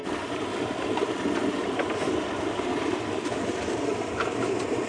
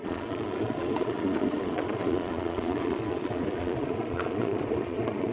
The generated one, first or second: second